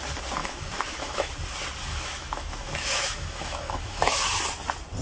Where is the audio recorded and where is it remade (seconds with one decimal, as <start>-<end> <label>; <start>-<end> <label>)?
0.0-0.4 recorded; 0.4-1.3 remade; 1.3-1.9 recorded; 1.9-4.1 remade; 4.1-5.0 recorded